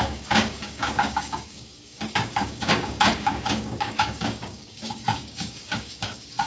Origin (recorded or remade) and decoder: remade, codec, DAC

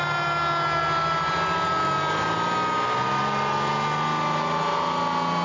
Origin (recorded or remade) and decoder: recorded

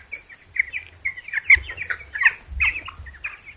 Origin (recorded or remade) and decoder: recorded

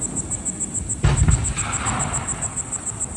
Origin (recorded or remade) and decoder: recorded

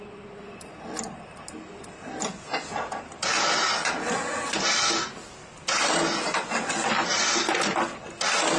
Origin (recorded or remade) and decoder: recorded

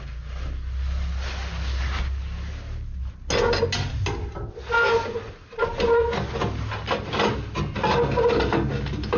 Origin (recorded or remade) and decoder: recorded